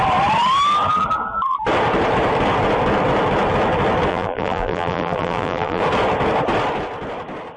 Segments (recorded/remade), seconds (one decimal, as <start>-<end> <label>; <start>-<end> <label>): 0.0-4.1 recorded; 4.1-5.8 remade; 5.8-7.6 recorded